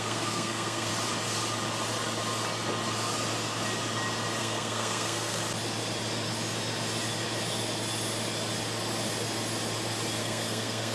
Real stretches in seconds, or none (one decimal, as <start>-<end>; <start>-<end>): 0.9-4.4; 5.4-10.2